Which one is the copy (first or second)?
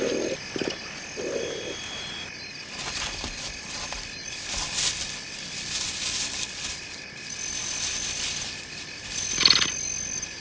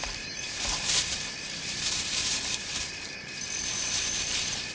second